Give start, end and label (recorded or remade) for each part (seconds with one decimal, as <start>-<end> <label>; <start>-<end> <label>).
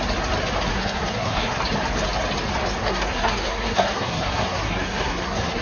0.0-0.7 recorded; 0.7-1.6 remade; 1.6-2.8 recorded; 2.8-5.6 remade